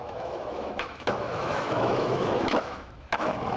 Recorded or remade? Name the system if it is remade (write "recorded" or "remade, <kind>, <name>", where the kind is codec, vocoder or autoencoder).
remade, autoencoder, DAC-VAE